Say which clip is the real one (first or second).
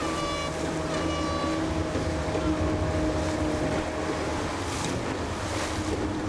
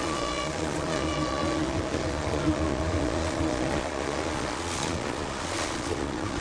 first